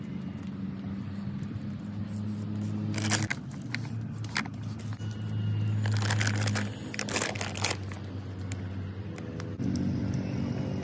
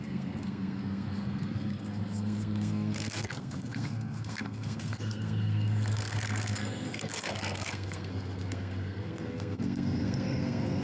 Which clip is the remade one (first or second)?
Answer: second